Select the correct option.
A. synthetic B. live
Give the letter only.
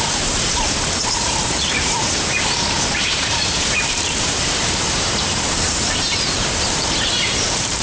A